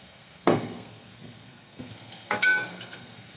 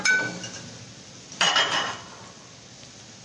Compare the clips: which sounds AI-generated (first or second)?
first